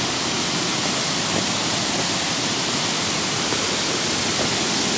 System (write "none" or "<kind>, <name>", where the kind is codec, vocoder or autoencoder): vocoder, BigVGAN v2